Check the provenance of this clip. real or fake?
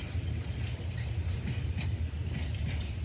real